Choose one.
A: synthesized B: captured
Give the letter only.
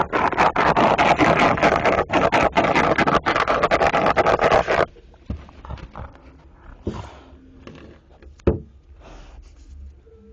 B